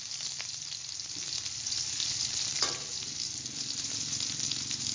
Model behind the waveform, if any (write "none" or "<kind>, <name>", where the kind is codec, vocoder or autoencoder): vocoder, BigVGAN v2